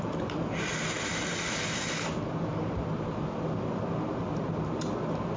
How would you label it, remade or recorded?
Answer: recorded